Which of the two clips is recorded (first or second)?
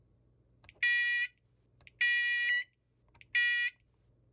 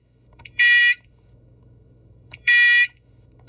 first